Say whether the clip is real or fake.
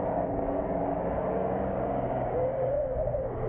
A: fake